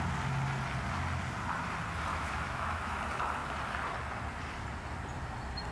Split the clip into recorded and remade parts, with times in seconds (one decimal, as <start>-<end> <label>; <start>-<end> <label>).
0.0-2.1 recorded; 2.1-3.0 remade; 3.0-5.7 recorded